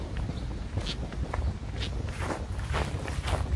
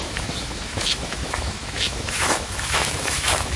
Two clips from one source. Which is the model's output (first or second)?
second